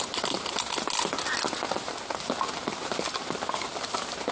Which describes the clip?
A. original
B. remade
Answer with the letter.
A